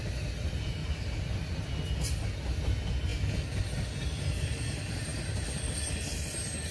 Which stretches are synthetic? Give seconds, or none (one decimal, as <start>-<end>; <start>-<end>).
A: none